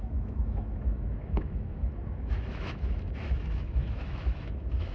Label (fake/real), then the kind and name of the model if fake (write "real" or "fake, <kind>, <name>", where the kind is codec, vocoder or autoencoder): fake, autoencoder, DAC-VAE